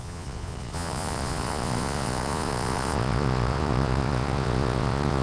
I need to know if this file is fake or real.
fake